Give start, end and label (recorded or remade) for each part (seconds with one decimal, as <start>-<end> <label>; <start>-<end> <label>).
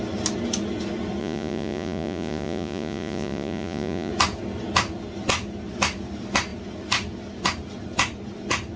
0.0-1.2 recorded; 1.2-4.1 remade; 4.1-8.8 recorded